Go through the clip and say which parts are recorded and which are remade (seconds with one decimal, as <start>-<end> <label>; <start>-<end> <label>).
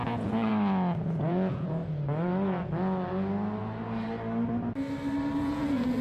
0.0-0.5 remade; 0.5-1.0 recorded; 1.0-1.8 remade; 1.8-5.4 recorded; 5.4-6.0 remade